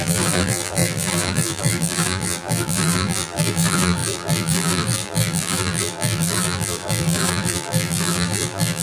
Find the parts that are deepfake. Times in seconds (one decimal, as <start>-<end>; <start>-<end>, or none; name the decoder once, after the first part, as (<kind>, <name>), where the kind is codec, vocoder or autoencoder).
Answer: 0.0-8.8 (vocoder, BigVGAN v2)